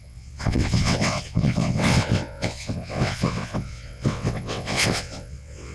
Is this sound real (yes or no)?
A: no